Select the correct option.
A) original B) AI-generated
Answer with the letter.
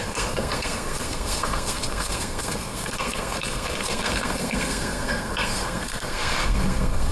B